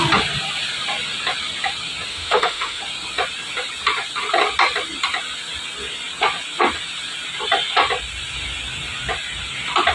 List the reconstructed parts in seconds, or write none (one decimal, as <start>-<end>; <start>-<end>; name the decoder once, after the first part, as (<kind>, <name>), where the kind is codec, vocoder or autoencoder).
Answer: 2.1-2.8 (autoencoder, DAC-VAE)